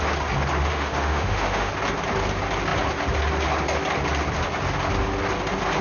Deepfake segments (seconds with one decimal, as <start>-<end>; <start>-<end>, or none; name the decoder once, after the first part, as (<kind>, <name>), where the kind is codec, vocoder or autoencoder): 0.7-1.7 (autoencoder, DAC-VAE)